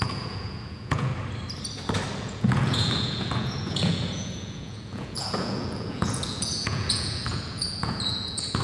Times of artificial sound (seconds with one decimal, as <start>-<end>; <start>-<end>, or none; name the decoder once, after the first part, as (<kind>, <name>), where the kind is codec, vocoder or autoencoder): 0.0-1.1 (vocoder, Vocos); 2.2-8.6